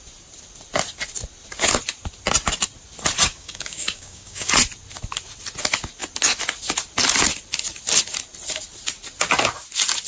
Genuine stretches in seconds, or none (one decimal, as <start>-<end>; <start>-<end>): 0.0-3.3; 4.5-10.1